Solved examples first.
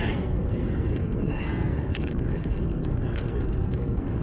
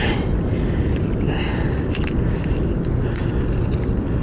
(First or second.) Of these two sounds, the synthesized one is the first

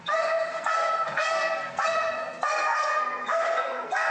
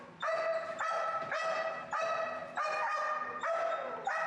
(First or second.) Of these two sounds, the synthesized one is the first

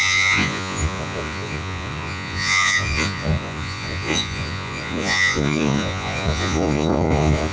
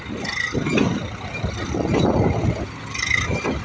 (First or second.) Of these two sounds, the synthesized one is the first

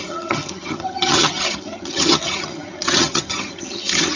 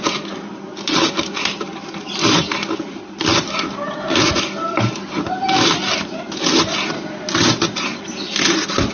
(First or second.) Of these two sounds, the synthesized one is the first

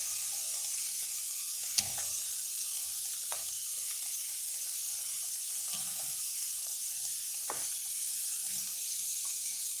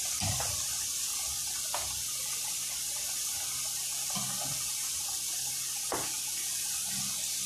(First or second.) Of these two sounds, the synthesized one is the first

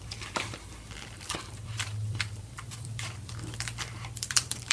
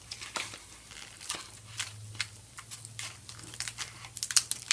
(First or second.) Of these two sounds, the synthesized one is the first